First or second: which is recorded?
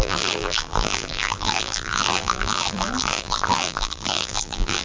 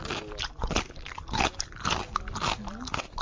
second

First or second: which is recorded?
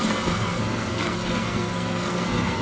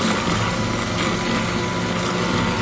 second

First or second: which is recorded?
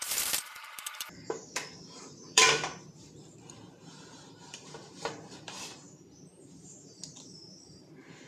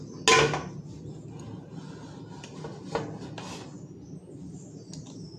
second